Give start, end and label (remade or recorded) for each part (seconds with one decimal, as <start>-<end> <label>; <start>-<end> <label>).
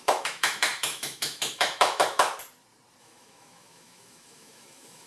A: 0.0-2.3 remade; 2.3-3.0 recorded; 3.0-5.1 remade